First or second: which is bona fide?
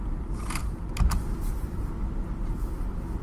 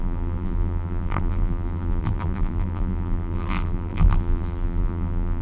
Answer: first